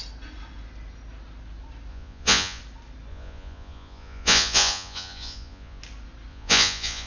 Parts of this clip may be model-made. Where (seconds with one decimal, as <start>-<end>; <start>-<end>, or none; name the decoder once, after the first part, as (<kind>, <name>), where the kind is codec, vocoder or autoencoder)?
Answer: 1.9-2.6 (vocoder, Vocos); 3.1-5.8; 6.3-7.1